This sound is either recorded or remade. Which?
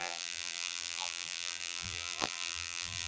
remade